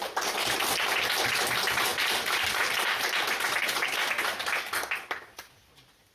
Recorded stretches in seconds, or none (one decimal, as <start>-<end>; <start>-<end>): 0.0-6.1